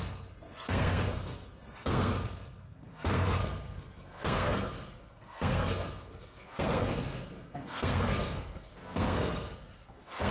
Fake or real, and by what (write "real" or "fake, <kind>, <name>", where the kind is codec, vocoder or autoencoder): fake, codec, SNAC